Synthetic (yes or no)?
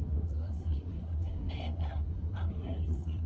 yes